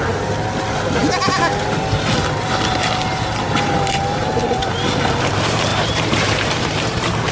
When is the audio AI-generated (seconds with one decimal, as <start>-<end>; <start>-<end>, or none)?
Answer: 5.7-7.3